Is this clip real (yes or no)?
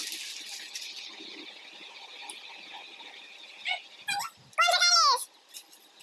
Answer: yes